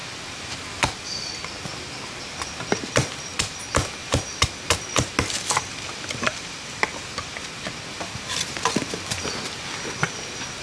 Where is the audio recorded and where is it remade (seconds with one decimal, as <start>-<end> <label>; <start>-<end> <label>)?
0.0-10.6 recorded